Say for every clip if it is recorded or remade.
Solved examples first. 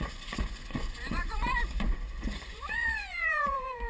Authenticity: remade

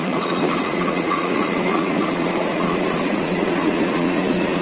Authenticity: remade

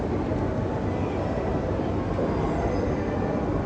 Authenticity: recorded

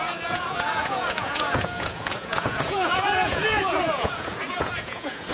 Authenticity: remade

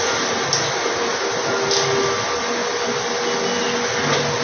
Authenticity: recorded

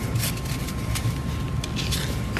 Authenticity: recorded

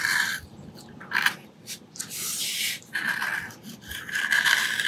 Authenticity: recorded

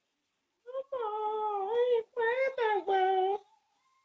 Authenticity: recorded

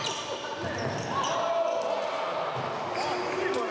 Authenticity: recorded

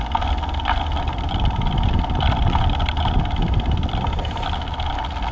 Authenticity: recorded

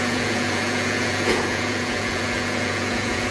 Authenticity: remade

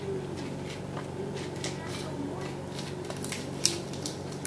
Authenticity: recorded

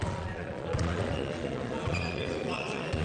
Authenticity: remade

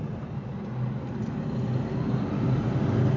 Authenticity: recorded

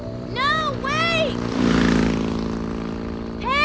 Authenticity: recorded